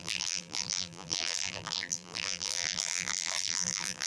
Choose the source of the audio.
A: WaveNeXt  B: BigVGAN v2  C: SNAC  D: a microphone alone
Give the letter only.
B